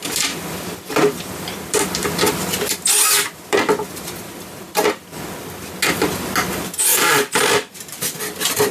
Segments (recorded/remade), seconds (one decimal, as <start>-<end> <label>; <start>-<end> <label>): 0.0-5.1 remade; 5.1-6.9 recorded; 6.9-8.2 remade; 8.2-8.7 recorded